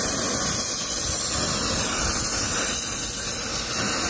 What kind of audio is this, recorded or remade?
recorded